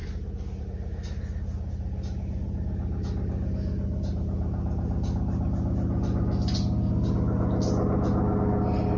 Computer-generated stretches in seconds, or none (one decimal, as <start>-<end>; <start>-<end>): none

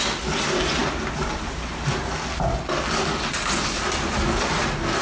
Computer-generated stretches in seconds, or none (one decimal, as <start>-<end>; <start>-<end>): none

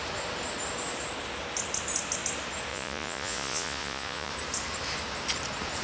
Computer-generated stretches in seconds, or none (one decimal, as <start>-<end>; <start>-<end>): 2.7-4.3

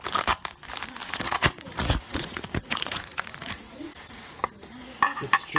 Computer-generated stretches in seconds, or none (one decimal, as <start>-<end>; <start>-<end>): 1.0-4.4

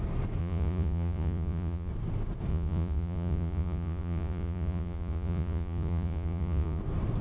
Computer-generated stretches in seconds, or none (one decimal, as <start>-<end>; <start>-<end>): 0.4-1.9; 2.5-6.8

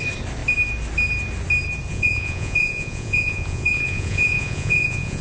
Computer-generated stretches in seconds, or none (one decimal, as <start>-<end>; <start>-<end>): 1.9-5.2

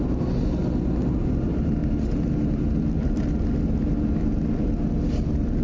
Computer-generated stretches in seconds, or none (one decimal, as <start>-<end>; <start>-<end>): none

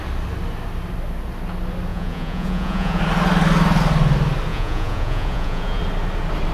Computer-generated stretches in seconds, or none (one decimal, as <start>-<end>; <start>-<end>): 1.9-3.0; 4.5-5.8